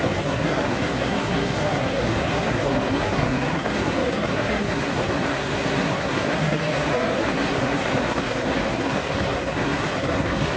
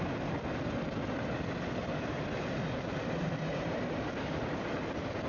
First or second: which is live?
second